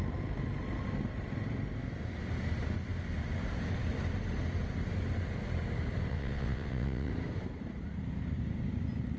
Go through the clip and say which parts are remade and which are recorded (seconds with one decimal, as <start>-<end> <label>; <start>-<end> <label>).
0.0-6.1 recorded; 6.1-7.1 remade; 7.1-9.2 recorded